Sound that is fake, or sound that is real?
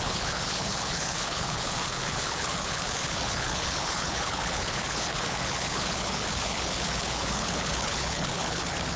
fake